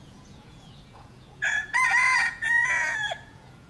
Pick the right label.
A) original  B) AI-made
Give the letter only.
B